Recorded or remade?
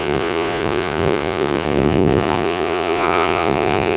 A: remade